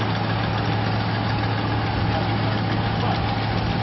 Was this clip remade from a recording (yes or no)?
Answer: no